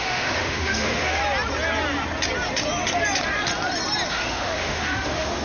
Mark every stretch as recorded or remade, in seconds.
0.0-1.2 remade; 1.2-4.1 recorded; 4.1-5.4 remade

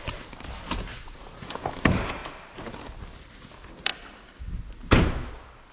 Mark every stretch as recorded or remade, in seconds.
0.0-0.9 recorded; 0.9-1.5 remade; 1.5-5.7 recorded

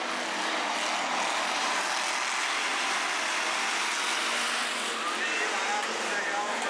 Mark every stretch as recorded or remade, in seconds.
0.0-6.7 recorded